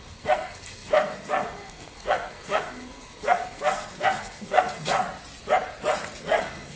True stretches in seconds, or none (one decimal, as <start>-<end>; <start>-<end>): 5.0-6.2